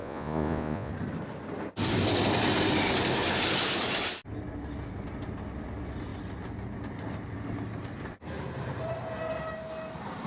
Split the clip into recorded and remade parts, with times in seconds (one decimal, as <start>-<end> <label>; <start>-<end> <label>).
0.0-0.9 remade; 0.9-10.3 recorded